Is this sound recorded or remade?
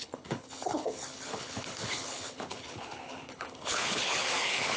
remade